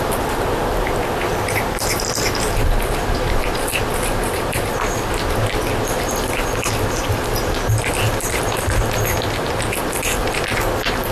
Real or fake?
real